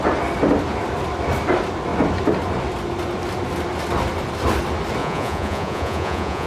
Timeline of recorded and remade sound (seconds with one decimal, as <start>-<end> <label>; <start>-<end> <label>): 0.0-5.0 recorded; 5.0-6.5 remade